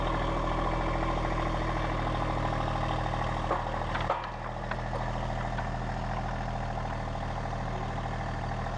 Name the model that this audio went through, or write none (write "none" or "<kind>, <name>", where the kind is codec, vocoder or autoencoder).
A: none